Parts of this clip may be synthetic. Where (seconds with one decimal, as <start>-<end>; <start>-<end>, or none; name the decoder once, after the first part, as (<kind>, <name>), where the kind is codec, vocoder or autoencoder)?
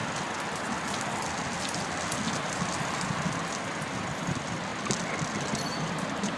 none